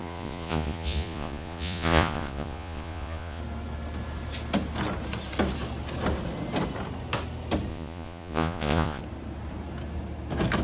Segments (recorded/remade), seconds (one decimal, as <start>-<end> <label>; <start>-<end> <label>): 0.0-3.4 remade; 3.4-7.7 recorded; 7.7-9.0 remade; 9.0-10.6 recorded

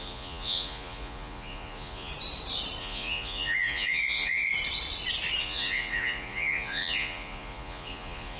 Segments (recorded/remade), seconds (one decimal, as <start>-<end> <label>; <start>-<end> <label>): 0.0-2.1 remade; 2.1-2.8 recorded; 2.8-4.5 remade; 4.5-5.4 recorded; 5.4-8.4 remade

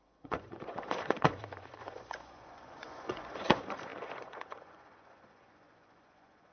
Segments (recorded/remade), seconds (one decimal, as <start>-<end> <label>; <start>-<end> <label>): 0.0-6.5 remade

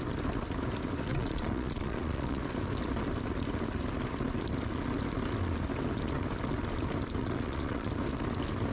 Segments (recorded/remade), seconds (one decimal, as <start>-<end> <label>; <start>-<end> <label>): 0.0-1.1 recorded; 1.1-2.4 remade; 2.4-7.2 recorded; 7.2-7.9 remade; 7.9-8.7 recorded

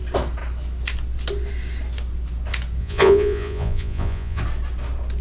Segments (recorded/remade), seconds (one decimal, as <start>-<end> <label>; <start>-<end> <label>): 0.0-2.8 recorded; 2.8-4.4 remade; 4.4-5.2 recorded